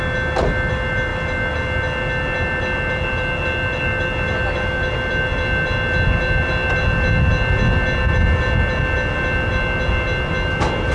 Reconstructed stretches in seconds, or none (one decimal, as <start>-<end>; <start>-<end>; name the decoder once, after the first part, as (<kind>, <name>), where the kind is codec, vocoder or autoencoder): none